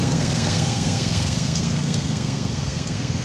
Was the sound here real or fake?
fake